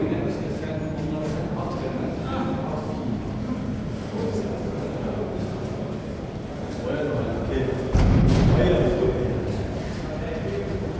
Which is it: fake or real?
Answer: real